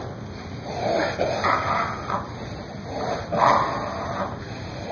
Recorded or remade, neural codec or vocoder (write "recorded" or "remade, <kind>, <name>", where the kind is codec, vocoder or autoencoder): recorded